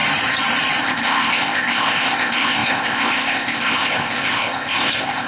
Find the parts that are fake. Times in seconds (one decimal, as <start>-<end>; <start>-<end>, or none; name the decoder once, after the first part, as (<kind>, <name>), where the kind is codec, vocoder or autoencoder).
0.8-5.3 (codec, ZipCodec)